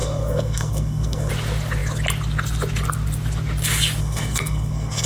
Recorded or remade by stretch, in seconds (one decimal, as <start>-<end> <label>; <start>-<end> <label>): 0.0-1.3 remade; 1.3-4.0 recorded; 4.0-5.1 remade